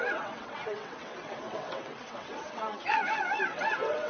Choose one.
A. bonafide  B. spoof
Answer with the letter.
B